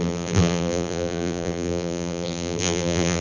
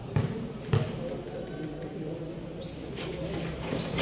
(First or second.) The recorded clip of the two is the second